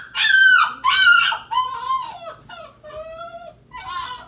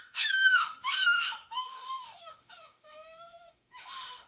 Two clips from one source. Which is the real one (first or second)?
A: first